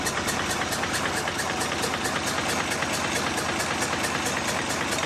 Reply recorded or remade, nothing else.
recorded